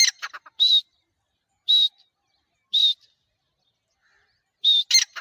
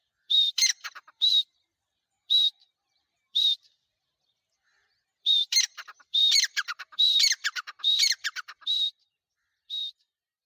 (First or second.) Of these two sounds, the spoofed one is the second